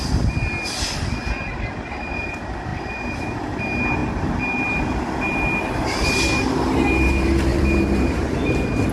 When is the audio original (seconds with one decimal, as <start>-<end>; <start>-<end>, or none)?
0.0-2.7; 3.6-7.5; 8.4-8.9